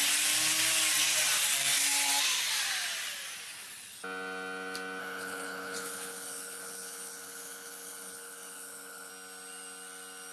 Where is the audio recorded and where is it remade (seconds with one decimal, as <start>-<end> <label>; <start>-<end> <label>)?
0.0-5.0 recorded; 5.0-9.1 remade; 9.1-10.3 recorded